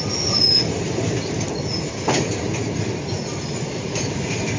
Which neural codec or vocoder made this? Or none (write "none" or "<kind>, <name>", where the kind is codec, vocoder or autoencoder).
none